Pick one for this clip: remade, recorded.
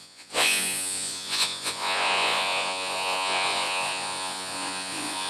remade